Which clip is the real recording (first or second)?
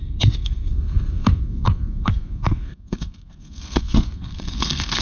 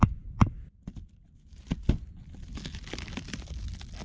second